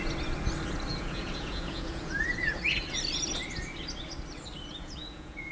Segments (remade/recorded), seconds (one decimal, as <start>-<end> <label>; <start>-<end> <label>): 0.0-0.9 recorded; 0.9-2.6 remade; 2.6-4.7 recorded; 4.7-5.5 remade